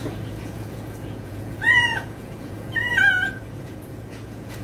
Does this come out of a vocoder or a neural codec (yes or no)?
yes